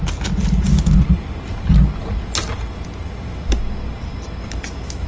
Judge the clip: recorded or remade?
recorded